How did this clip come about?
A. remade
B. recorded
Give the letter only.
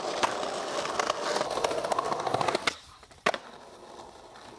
B